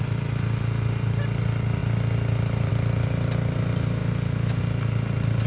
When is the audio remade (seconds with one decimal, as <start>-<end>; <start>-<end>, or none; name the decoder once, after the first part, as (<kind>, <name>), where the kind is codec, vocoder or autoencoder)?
4.0-4.6 (vocoder, BigVGAN v2)